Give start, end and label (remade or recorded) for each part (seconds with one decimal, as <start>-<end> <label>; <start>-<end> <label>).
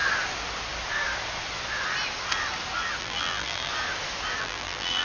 0.0-3.0 recorded; 3.0-3.7 remade; 3.7-4.4 recorded; 4.4-5.0 remade